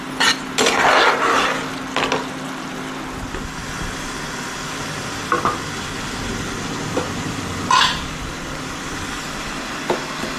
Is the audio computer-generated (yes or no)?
no